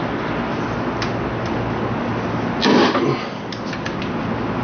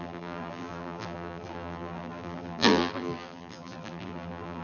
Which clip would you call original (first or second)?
first